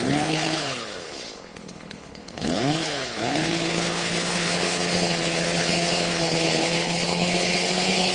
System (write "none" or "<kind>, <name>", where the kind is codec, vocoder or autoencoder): codec, HILCodec